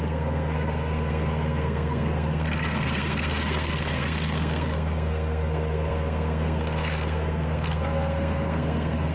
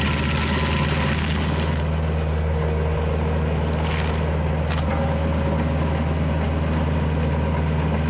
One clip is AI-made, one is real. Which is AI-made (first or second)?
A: first